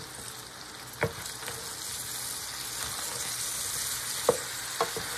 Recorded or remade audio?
recorded